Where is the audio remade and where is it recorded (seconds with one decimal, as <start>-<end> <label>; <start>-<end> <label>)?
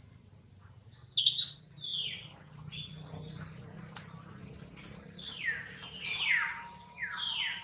0.0-7.6 recorded